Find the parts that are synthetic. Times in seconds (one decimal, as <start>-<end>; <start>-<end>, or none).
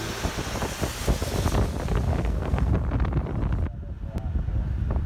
2.1-2.7